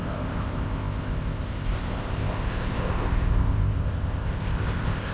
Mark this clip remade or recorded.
remade